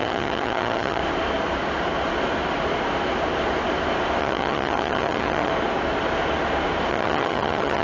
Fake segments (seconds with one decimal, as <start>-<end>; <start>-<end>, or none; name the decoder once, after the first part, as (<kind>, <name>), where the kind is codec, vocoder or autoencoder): 0.0-1.0 (vocoder, HiFi-GAN); 4.2-5.5; 6.9-7.8